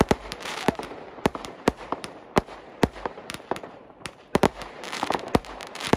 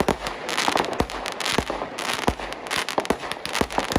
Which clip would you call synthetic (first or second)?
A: first